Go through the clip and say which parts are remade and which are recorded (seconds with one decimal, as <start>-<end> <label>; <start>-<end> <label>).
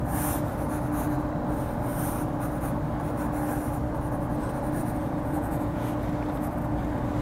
0.0-4.8 recorded; 4.8-5.9 remade; 5.9-7.2 recorded